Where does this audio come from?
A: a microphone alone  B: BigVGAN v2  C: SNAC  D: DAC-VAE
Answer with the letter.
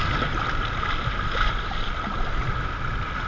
A